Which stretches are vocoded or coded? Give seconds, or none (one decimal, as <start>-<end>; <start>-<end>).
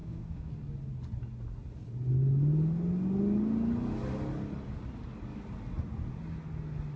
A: 0.0-0.5